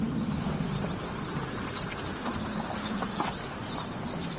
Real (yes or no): yes